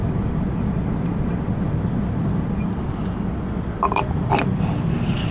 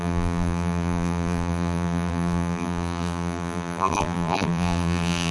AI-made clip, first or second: second